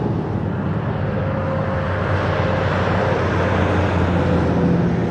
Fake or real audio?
real